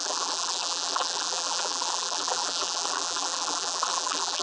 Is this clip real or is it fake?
fake